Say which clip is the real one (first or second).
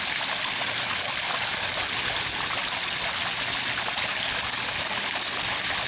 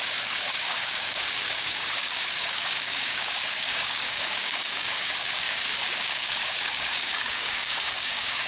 first